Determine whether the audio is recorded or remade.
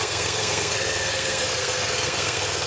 remade